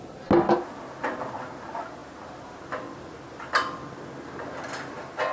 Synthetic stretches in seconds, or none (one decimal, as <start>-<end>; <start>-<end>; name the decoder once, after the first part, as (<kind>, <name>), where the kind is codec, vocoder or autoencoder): none